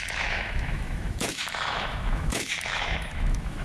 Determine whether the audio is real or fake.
fake